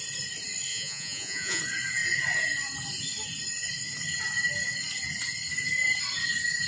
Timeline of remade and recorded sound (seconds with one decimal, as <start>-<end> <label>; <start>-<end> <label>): 0.0-0.7 recorded; 0.7-1.6 remade; 1.6-6.7 recorded